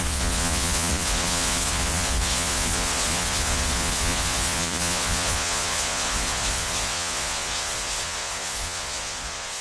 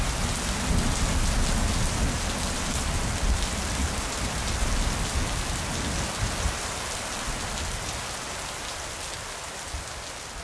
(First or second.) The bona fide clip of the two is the second